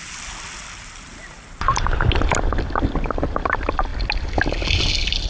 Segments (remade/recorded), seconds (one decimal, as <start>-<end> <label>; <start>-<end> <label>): 0.0-5.3 recorded